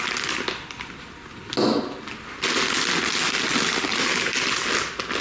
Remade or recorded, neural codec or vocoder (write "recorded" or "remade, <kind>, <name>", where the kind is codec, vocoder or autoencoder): recorded